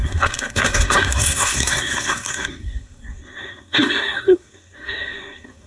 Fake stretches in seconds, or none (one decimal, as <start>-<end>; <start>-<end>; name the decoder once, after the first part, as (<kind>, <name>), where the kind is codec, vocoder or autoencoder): 0.0-5.7 (codec, SNAC)